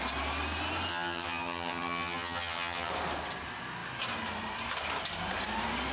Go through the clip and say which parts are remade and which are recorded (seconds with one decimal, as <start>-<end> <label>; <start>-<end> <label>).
0.0-0.9 recorded; 0.9-2.9 remade; 2.9-5.9 recorded